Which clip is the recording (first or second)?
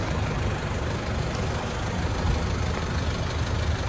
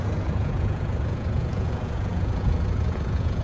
first